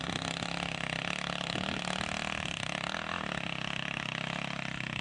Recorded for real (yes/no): yes